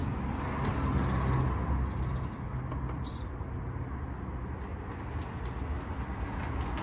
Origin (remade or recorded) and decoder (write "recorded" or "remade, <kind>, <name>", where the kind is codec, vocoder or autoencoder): recorded